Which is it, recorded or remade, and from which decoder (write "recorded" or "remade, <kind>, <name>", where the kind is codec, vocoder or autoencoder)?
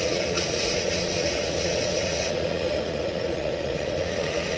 remade, vocoder, Vocos